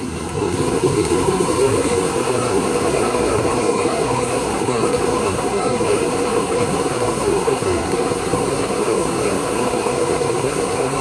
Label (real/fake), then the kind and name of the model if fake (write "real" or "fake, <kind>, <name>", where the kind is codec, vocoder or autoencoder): fake, codec, SNAC